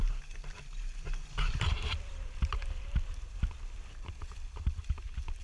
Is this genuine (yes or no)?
yes